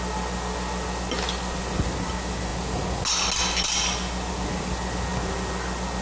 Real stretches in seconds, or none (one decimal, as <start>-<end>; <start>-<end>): 0.0-6.0

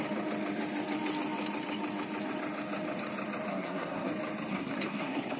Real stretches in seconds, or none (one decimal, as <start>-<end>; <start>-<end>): 0.0-3.5; 4.1-4.5

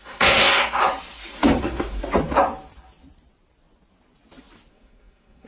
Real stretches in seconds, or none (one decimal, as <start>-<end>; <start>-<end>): 0.8-1.6; 2.0-4.7

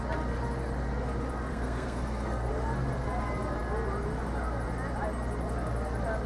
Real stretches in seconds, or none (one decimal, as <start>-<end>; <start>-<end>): 0.0-1.5; 2.5-6.3

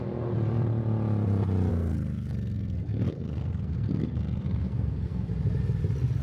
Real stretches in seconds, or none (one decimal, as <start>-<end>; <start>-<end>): 0.0-1.7; 5.3-6.2

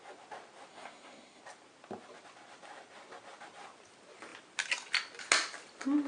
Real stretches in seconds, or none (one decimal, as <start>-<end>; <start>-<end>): 0.0-0.7; 1.4-6.1